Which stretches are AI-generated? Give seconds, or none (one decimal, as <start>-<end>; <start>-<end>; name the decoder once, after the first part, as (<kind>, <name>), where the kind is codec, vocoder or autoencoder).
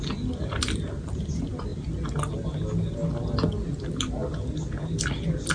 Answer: none